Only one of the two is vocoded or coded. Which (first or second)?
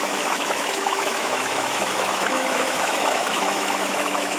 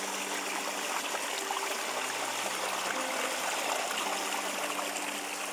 first